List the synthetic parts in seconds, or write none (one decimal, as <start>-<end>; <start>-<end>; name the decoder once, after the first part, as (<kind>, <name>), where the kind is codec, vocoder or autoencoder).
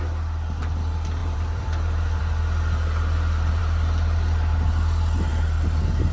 1.2-2.2 (vocoder, BigVGAN v2)